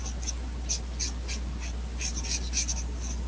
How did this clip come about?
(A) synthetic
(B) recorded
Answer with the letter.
B